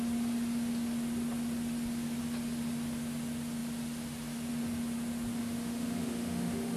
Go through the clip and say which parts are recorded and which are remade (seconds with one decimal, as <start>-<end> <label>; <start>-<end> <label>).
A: 0.0-5.4 recorded; 5.4-6.8 remade